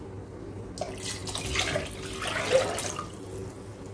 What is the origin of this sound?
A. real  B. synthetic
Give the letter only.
A